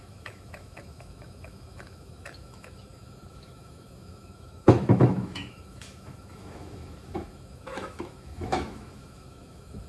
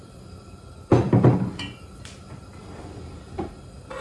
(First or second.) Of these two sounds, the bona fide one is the second